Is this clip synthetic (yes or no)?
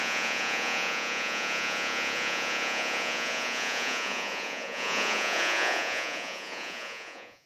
yes